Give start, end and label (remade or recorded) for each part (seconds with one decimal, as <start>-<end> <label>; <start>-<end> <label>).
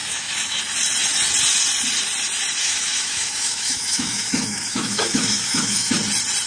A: 0.0-0.6 remade; 0.6-2.6 recorded; 2.6-5.9 remade; 5.9-6.5 recorded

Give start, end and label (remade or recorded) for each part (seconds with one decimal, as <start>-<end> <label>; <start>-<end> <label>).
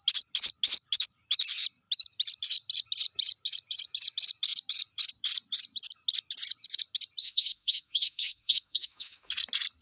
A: 0.0-7.2 recorded; 7.2-9.3 remade; 9.3-9.8 recorded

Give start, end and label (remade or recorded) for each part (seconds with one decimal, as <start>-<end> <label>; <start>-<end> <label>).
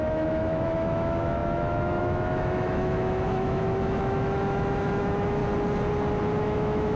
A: 0.0-5.4 remade; 5.4-6.4 recorded; 6.4-7.0 remade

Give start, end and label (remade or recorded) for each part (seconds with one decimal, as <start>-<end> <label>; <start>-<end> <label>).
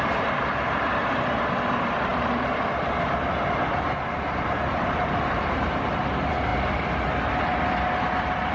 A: 0.0-8.5 recorded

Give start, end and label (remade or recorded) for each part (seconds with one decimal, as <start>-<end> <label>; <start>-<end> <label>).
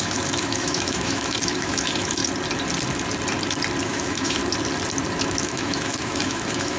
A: 0.0-2.2 remade; 2.2-3.8 recorded; 3.8-4.4 remade; 4.4-5.2 recorded; 5.2-6.8 remade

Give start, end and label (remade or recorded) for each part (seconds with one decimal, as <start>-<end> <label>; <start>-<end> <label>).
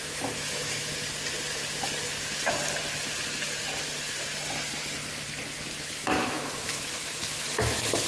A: 0.0-0.9 remade; 0.9-5.8 recorded; 5.8-8.1 remade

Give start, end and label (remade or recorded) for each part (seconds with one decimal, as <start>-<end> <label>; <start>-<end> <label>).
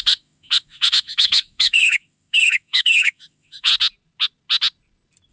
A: 0.0-3.7 remade; 3.7-5.3 recorded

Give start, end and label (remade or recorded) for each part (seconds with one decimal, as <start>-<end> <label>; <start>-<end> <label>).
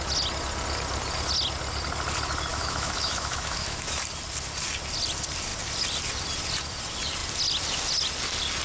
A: 0.0-2.5 recorded; 2.5-4.0 remade; 4.0-8.6 recorded